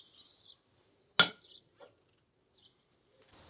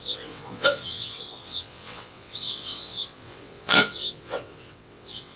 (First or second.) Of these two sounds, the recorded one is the first